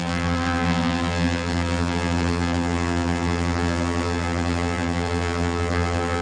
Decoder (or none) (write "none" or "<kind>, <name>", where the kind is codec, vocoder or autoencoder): vocoder, BigVGAN v2